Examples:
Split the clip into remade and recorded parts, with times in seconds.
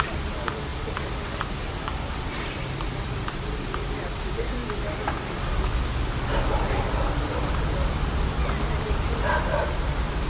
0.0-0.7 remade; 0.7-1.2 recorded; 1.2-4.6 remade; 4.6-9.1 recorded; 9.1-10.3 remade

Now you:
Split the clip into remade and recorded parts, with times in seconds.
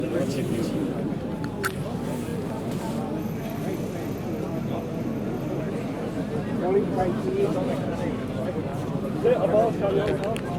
0.0-0.8 recorded; 0.8-1.5 remade; 1.5-2.3 recorded; 2.3-5.6 remade; 5.6-8.7 recorded; 8.7-9.9 remade; 9.9-10.6 recorded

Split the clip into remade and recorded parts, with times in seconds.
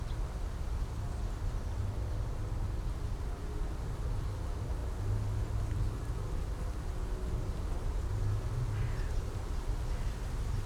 0.0-10.7 recorded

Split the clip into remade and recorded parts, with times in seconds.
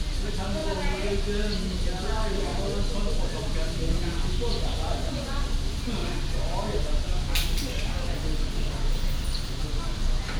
0.0-10.4 recorded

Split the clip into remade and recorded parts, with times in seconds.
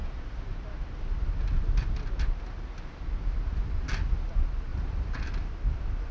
0.0-4.7 recorded; 4.7-5.5 remade; 5.5-6.1 recorded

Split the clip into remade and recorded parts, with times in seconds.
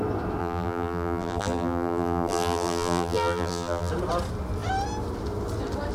0.0-0.4 recorded; 0.4-3.9 remade; 3.9-5.9 recorded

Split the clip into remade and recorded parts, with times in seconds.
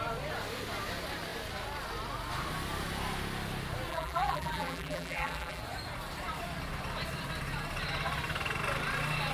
0.0-3.9 recorded; 3.9-5.6 remade; 5.6-9.3 recorded